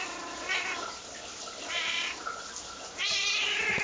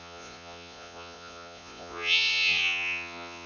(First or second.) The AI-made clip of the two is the second